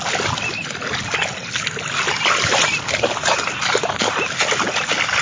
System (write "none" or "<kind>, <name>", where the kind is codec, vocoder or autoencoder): none